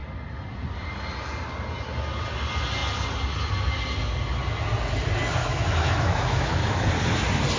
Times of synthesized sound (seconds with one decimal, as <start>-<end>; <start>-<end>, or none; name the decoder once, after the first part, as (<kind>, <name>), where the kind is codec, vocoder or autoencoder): 5.4-6.9 (autoencoder, DAC-VAE)